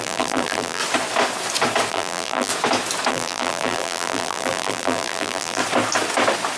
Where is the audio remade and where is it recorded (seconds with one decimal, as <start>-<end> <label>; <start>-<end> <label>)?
0.0-0.8 remade; 0.8-1.9 recorded; 1.9-2.5 remade; 2.5-3.1 recorded; 3.1-5.6 remade; 5.6-6.6 recorded